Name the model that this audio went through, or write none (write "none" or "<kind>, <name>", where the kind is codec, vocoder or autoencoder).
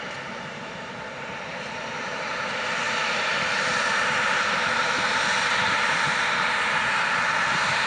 vocoder, BigVGAN v2